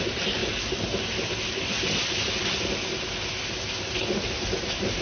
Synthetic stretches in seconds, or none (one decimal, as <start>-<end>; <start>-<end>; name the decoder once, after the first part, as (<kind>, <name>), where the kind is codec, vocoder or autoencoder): none